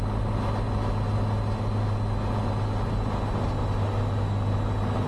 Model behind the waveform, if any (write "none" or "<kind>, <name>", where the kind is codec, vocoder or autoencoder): none